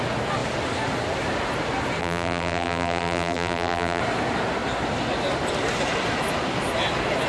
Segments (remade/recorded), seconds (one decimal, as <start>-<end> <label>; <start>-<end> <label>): 0.0-2.0 recorded; 2.0-4.0 remade; 4.0-7.3 recorded